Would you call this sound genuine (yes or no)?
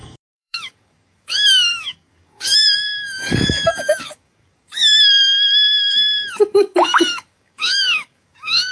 no